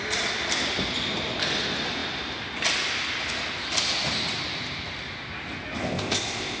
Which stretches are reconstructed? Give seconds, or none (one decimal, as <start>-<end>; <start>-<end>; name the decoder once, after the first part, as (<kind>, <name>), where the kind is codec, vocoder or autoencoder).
5.8-6.6 (codec, ZipCodec)